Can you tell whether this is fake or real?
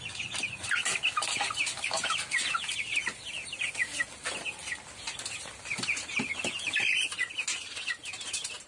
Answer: real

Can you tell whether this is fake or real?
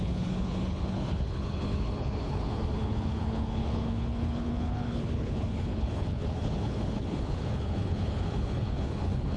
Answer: fake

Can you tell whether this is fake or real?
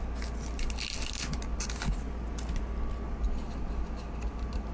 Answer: real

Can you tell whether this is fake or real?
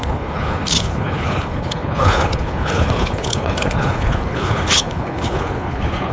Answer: fake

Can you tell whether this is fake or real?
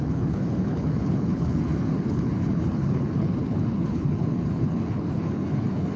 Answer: fake